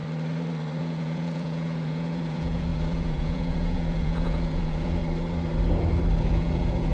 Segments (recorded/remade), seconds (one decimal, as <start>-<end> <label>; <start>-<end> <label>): 0.0-0.8 recorded; 0.8-5.0 remade; 5.0-6.2 recorded; 6.2-6.9 remade